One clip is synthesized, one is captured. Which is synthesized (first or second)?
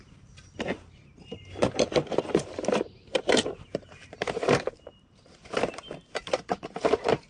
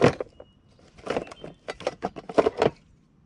first